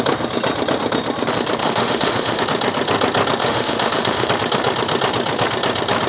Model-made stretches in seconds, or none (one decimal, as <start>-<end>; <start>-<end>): 1.6-2.4; 3.4-4.3